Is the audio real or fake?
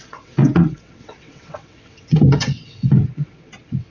fake